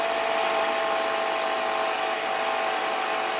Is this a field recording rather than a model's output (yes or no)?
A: yes